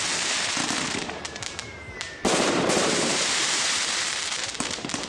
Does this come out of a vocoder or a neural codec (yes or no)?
yes